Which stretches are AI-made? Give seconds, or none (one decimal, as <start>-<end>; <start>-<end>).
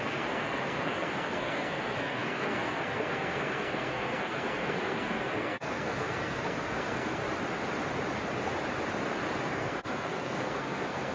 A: 0.0-7.2; 9.5-11.1